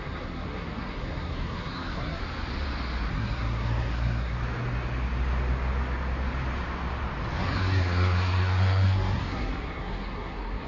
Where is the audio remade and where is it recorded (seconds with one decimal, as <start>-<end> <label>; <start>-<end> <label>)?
0.0-2.2 remade; 2.2-3.1 recorded; 3.1-4.4 remade; 4.4-7.4 recorded; 7.4-10.7 remade